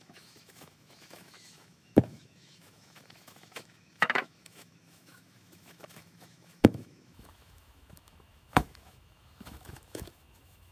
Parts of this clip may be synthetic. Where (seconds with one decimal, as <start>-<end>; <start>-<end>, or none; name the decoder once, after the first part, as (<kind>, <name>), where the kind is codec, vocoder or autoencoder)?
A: 0.0-10.7 (autoencoder, DAC-VAE)